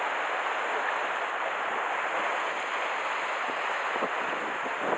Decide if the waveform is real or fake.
real